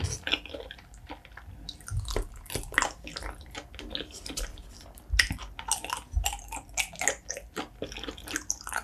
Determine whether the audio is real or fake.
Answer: real